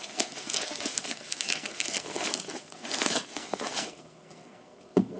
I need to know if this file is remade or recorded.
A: remade